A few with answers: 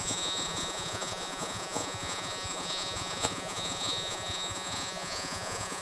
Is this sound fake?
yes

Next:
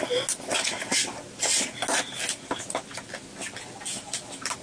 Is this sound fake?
no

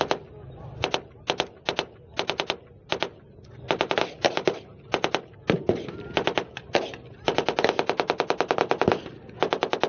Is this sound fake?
no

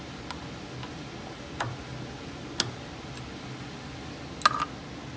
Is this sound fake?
no